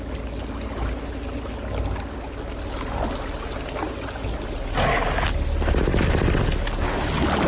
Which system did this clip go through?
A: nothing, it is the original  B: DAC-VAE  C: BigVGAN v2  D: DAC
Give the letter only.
A